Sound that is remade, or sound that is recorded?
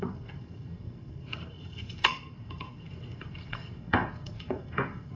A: remade